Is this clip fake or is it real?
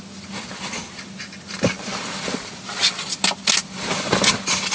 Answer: real